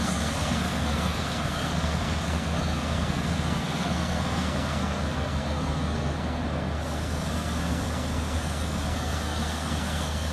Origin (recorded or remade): remade